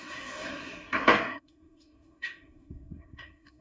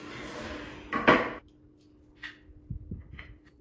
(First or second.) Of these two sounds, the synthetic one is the first